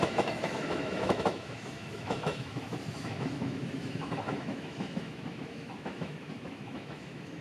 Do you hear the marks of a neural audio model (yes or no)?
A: yes